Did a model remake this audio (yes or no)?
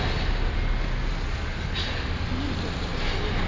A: no